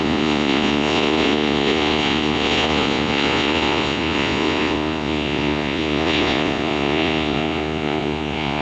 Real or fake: fake